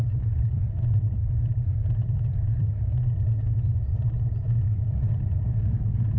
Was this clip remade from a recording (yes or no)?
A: yes